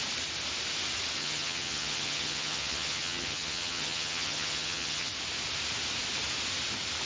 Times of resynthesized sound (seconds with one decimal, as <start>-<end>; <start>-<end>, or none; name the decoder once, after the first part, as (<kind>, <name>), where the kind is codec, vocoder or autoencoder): 1.2-5.1 (vocoder, HiFi-GAN)